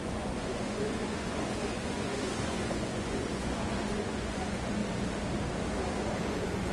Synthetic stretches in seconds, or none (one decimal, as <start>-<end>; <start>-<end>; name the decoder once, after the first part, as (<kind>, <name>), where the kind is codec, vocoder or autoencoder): 0.0-4.8 (vocoder, Vocos); 5.9-6.7